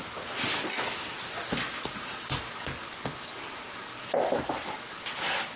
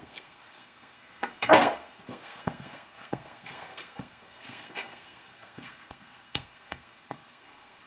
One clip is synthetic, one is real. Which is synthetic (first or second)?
second